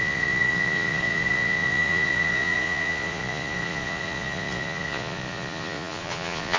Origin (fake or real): fake